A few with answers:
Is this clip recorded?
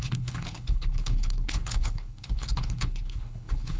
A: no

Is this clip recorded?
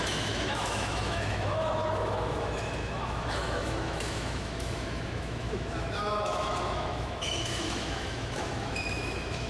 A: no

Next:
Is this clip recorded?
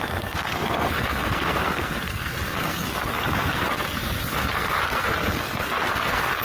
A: no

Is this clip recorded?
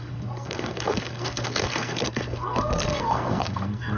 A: no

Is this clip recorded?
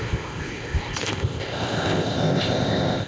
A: no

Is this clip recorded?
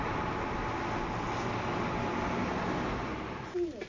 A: yes